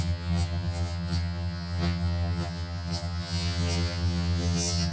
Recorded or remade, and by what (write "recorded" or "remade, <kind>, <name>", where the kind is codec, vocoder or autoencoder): remade, vocoder, HiFi-GAN